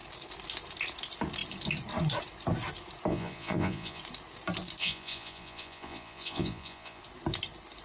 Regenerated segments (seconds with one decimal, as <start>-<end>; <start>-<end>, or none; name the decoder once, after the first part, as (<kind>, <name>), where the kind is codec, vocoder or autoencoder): 3.1-4.0 (vocoder, Vocos); 4.8-7.0